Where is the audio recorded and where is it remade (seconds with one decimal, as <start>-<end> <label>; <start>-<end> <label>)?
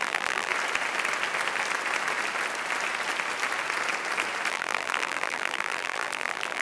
0.0-0.5 remade; 0.5-4.5 recorded; 4.5-6.6 remade